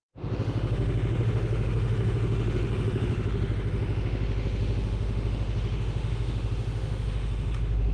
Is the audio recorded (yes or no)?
no